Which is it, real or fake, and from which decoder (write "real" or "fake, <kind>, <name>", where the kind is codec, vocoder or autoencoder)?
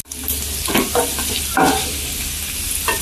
real